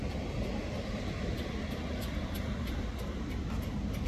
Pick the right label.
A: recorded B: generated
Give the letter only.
A